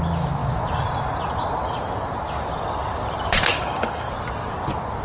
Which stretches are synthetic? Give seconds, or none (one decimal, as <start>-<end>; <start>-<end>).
3.5-4.1